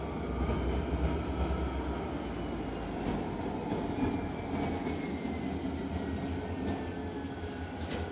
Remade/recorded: recorded